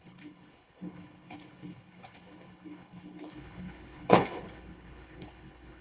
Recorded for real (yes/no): no